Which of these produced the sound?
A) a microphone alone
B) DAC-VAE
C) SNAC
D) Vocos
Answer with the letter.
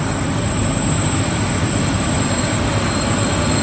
A